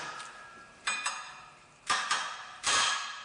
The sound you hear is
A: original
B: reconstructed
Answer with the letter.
B